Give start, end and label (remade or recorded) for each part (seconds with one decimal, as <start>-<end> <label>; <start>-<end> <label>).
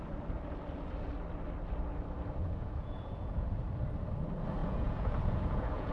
0.0-2.4 recorded; 2.4-3.5 remade; 3.5-4.6 recorded; 4.6-5.9 remade